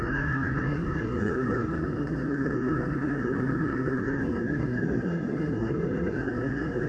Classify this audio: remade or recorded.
remade